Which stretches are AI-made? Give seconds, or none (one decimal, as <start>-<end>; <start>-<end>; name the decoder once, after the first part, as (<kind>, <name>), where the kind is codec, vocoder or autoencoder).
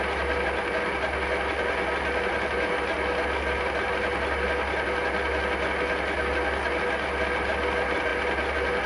none